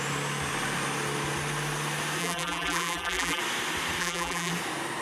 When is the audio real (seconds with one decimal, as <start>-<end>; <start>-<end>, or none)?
0.0-2.2; 3.4-4.0; 4.5-5.0